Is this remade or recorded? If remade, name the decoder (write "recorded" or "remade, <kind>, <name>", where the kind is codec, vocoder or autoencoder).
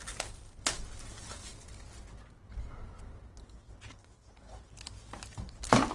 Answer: recorded